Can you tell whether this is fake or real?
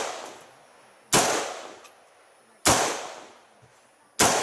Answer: real